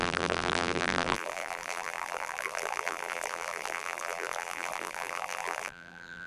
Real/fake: fake